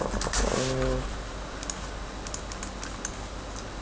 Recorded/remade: recorded